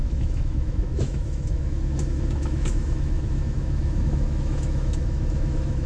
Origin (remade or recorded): remade